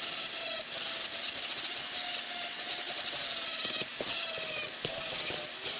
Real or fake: real